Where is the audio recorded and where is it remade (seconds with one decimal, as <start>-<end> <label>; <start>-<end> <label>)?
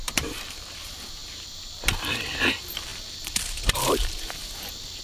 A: 0.0-5.0 remade